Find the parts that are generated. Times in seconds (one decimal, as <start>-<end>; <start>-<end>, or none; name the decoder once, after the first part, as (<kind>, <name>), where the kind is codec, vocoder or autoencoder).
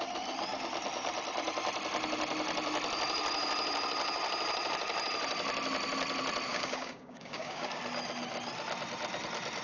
6.5-7.8 (codec, DAC)